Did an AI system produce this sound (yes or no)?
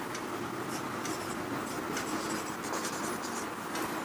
no